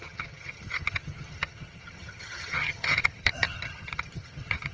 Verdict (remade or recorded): remade